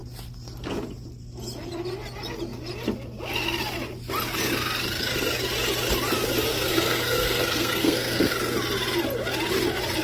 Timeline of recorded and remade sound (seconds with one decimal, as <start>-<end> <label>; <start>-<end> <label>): 0.0-6.5 recorded; 6.5-8.3 remade; 8.3-10.0 recorded